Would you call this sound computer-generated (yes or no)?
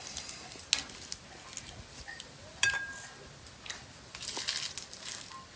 no